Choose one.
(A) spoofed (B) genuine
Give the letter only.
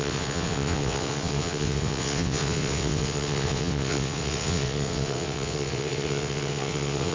A